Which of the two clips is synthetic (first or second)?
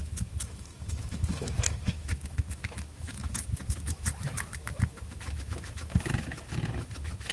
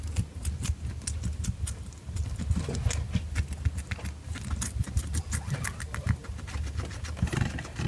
first